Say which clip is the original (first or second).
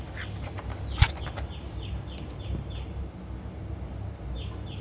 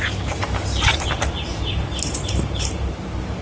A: first